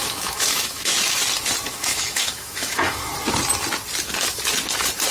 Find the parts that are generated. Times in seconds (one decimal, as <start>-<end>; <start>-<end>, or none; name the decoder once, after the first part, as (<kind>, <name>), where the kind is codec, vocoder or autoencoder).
0.0-1.2 (autoencoder, DAC-VAE); 1.7-3.1